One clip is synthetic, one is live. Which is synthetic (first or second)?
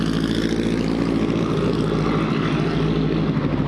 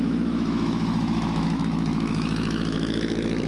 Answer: second